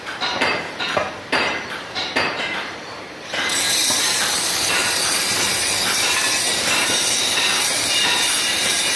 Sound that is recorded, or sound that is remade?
remade